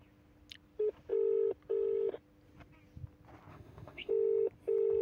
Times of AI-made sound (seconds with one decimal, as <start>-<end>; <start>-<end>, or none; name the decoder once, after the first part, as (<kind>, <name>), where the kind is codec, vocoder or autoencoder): 3.5-4.1 (autoencoder, DAC-VAE)